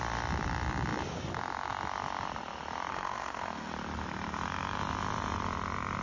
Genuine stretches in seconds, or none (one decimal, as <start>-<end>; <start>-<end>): 0.0-2.9; 3.7-6.0